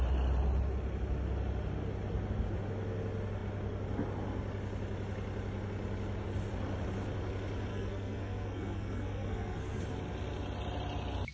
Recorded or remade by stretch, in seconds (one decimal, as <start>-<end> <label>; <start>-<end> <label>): 0.0-7.7 recorded; 7.7-9.8 remade; 9.8-11.3 recorded